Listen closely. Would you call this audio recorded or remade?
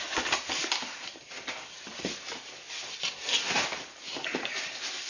recorded